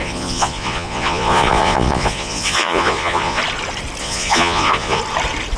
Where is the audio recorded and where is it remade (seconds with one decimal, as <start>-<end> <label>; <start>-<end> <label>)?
0.0-3.4 remade; 3.4-4.0 recorded; 4.0-5.0 remade; 5.0-5.6 recorded